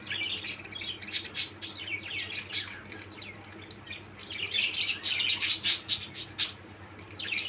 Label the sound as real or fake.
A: real